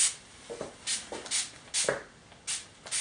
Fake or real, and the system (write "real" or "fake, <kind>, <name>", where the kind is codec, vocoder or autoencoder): real